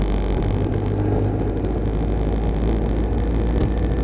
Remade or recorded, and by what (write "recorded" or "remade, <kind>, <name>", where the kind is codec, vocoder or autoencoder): recorded